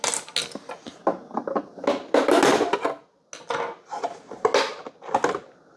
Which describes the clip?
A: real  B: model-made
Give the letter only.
A